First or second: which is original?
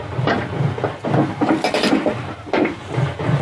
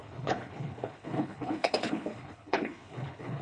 first